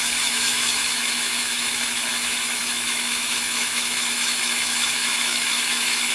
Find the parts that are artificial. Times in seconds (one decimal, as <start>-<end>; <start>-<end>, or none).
0.0-6.1